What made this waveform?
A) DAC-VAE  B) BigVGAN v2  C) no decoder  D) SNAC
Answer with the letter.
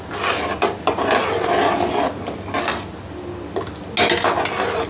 C